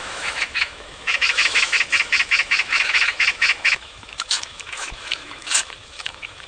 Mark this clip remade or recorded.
remade